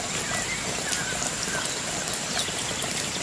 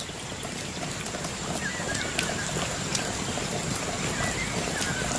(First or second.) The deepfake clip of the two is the second